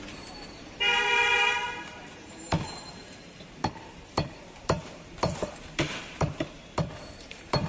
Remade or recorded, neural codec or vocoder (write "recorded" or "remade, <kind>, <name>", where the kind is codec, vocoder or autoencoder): remade, vocoder, BigVGAN v2